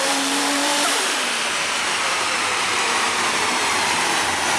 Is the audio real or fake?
fake